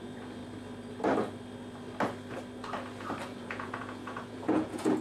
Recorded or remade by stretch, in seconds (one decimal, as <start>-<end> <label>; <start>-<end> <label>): 0.0-0.4 remade; 0.4-3.4 recorded; 3.4-5.0 remade